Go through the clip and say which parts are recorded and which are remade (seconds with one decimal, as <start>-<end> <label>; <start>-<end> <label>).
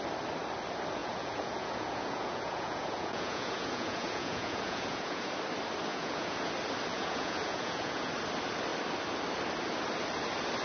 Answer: 0.0-1.0 recorded; 1.0-5.3 remade; 5.3-5.9 recorded; 5.9-6.5 remade; 6.5-6.9 recorded; 6.9-8.1 remade; 8.1-10.6 recorded